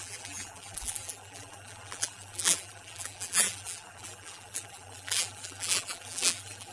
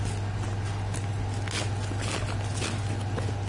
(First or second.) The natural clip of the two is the second